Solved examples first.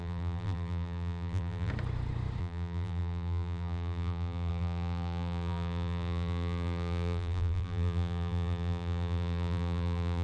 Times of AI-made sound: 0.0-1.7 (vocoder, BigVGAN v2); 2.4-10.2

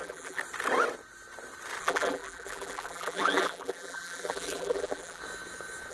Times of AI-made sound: 0.0-0.4 (vocoder, BigVGAN v2); 1.8-5.2

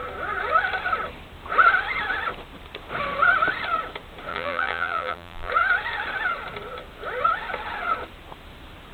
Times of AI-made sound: 4.3-5.5 (vocoder, BigVGAN v2)

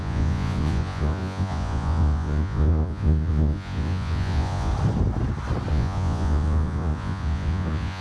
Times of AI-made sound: 0.0-4.7 (vocoder, Vocos); 5.7-8.0

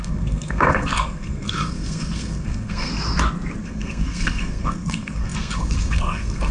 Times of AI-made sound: 0.0-2.9 (codec, SNAC); 3.6-6.5

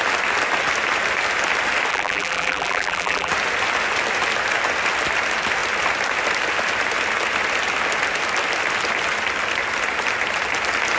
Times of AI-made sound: 1.9-3.3 (vocoder, BigVGAN v2)